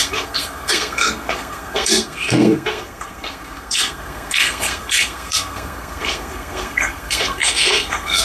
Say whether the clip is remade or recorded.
remade